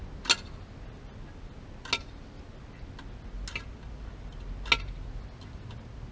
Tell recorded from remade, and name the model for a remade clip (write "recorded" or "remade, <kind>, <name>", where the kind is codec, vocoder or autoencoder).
recorded